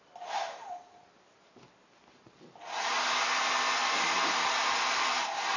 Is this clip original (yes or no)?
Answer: yes